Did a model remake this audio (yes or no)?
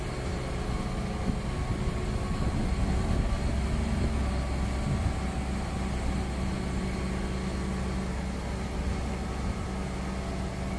no